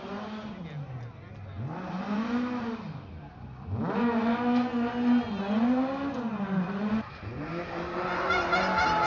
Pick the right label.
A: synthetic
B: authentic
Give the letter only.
B